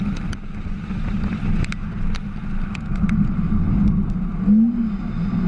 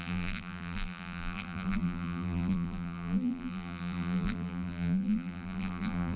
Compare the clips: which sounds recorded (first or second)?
first